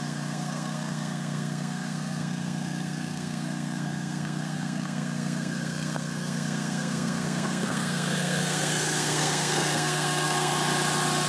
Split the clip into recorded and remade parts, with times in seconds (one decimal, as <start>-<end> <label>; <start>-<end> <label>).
0.0-10.5 remade; 10.5-11.3 recorded